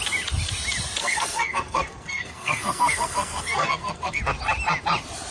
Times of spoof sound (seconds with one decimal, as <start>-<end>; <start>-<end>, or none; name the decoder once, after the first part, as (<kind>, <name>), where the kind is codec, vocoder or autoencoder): 1.0-4.2 (codec, SNAC)